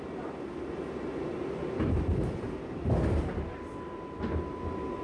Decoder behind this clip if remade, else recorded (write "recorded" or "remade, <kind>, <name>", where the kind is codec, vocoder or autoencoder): recorded